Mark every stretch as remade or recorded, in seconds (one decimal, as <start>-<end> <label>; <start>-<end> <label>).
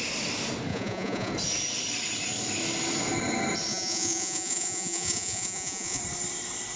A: 0.0-0.7 recorded; 0.7-1.3 remade; 1.3-3.7 recorded; 3.7-6.0 remade; 6.0-6.8 recorded